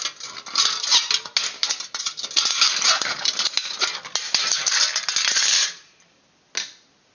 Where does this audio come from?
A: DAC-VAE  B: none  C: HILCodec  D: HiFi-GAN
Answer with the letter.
B